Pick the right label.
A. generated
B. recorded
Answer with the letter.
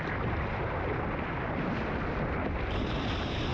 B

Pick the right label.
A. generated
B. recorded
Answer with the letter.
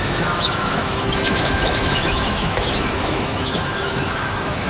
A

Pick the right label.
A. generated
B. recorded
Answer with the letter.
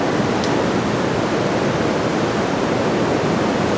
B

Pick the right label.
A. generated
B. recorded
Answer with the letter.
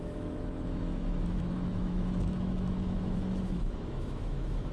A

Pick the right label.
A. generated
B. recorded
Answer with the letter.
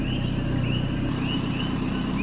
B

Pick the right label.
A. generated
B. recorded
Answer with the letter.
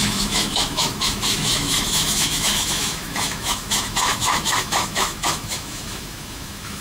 A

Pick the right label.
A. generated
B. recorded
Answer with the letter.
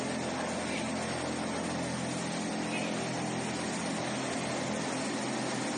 B